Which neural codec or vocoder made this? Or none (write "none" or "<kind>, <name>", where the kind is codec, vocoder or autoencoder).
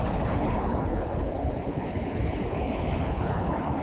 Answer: codec, HILCodec